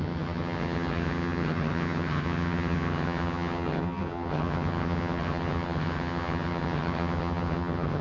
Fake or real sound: fake